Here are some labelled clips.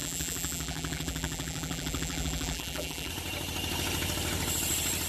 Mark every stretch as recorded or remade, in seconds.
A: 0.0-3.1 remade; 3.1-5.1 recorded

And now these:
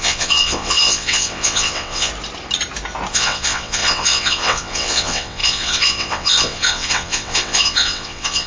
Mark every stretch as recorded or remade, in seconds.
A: 0.0-2.1 remade; 2.1-3.1 recorded; 3.1-8.5 remade

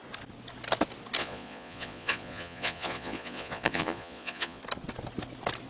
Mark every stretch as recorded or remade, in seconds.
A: 0.0-1.2 recorded; 1.2-4.6 remade; 4.6-5.7 recorded

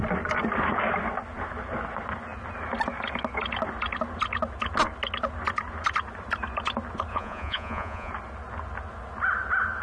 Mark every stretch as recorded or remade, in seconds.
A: 0.0-7.1 recorded; 7.1-8.1 remade; 8.1-9.8 recorded

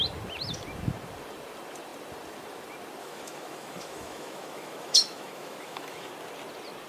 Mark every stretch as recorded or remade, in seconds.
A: 0.0-3.0 recorded; 3.0-6.1 remade; 6.1-6.9 recorded

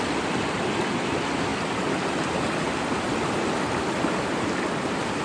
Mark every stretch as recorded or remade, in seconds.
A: 0.0-5.2 recorded

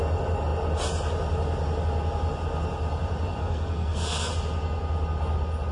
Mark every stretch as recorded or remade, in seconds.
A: 0.0-3.4 recorded; 3.4-4.3 remade; 4.3-5.7 recorded